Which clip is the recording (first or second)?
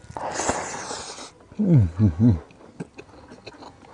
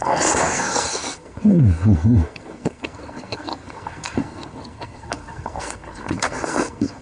first